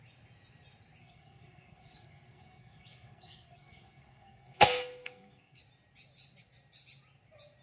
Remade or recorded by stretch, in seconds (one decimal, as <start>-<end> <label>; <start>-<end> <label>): 0.0-1.0 recorded; 1.0-5.6 remade; 5.6-7.6 recorded